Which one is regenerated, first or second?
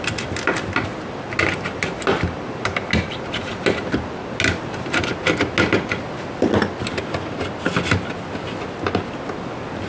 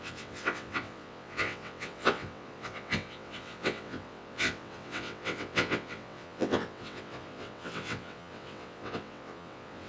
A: second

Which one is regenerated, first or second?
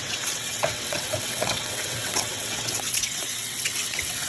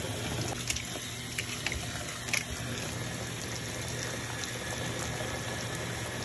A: first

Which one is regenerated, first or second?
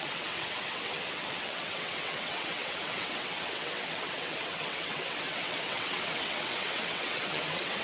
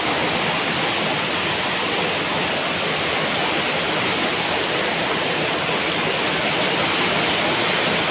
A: first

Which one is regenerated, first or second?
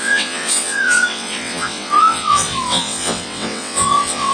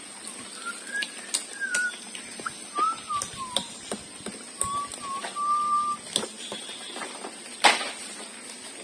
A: first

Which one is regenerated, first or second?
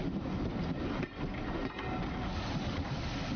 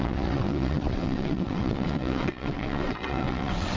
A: second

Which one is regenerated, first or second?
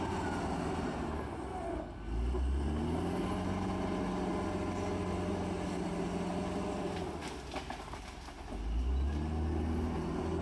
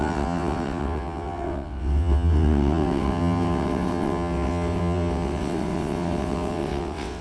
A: second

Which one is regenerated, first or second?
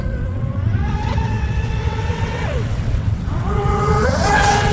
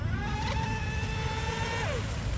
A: first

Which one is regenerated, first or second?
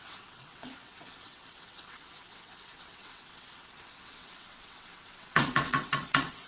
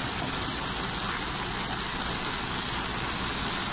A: first